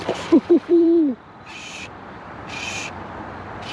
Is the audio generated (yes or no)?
yes